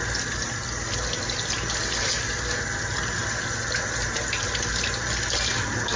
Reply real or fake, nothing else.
real